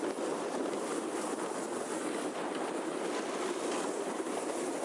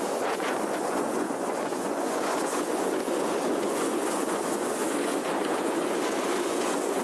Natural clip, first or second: first